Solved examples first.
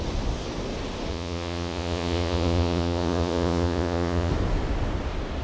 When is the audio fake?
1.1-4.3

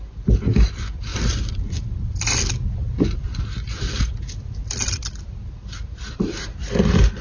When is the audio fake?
none

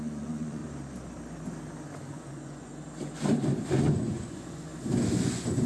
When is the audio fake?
0.0-0.6; 2.1-2.7; 3.8-4.7; 5.2-5.7

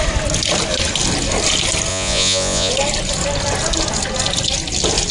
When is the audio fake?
1.9-2.7

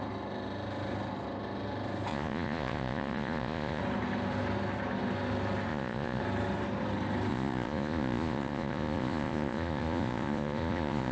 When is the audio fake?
2.1-3.8; 5.7-6.2; 7.3-11.1

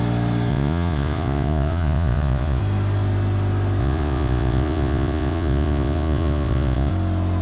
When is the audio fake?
0.5-2.6; 3.8-6.9

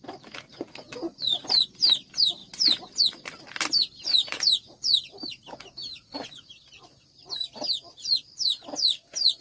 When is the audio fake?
0.5-1.4; 5.9-6.5

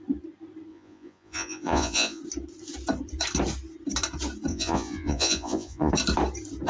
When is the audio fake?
0.7-2.2; 4.5-5.9